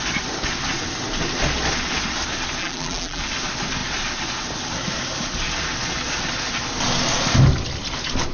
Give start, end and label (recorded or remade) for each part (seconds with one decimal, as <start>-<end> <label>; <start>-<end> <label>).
0.0-2.6 recorded; 2.6-3.2 remade; 3.2-8.3 recorded